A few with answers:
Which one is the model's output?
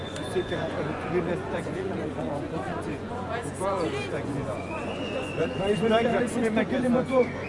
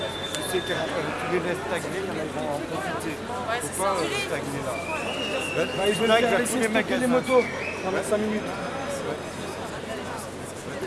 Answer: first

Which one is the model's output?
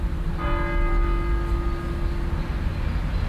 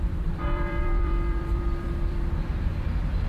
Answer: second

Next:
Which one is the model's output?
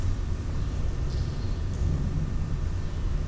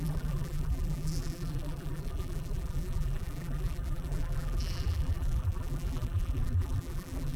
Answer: second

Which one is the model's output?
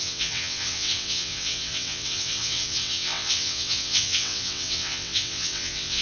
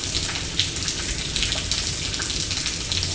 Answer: first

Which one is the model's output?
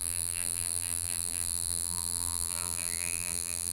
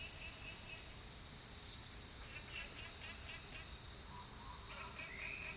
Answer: first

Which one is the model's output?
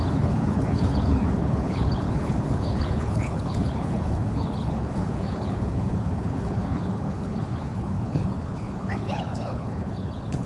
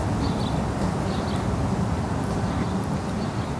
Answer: first